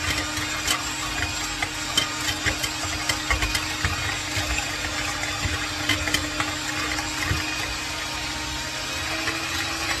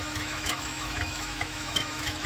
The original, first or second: first